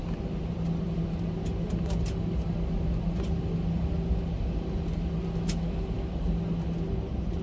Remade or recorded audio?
recorded